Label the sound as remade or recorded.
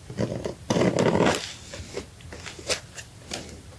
recorded